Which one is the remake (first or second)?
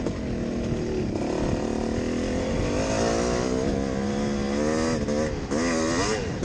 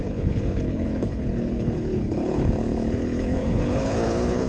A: second